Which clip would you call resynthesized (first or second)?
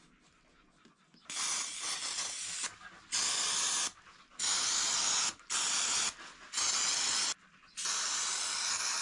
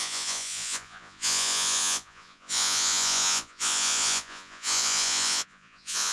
second